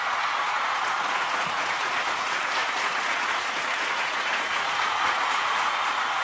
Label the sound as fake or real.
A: fake